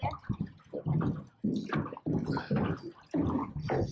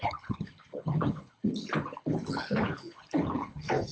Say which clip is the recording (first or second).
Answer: first